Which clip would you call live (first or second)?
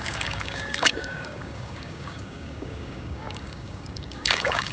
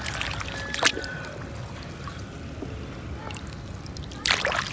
second